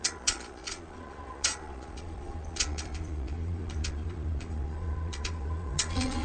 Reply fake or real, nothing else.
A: fake